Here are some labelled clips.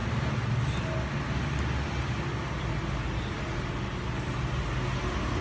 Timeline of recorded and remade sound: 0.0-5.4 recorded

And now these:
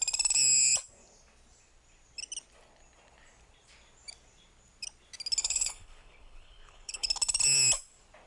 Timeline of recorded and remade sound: 0.0-5.4 recorded; 5.4-7.1 remade; 7.1-8.3 recorded

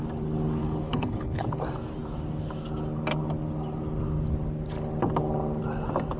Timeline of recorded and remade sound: 0.0-0.6 recorded; 0.6-1.6 remade; 1.6-6.2 recorded

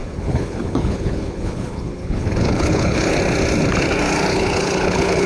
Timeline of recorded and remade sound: 0.0-3.2 remade; 3.2-4.3 recorded; 4.3-5.3 remade

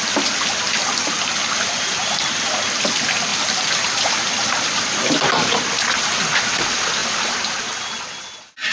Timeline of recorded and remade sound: 0.0-8.7 recorded

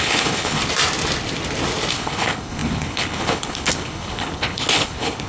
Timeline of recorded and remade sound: 0.0-0.6 remade; 0.6-1.9 recorded; 1.9-5.3 remade